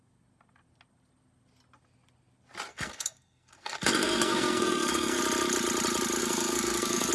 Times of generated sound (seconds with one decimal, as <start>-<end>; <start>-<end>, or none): 2.7-5.2; 6.2-7.1